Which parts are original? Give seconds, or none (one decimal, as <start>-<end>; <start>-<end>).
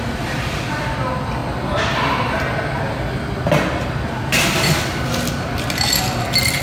0.0-6.6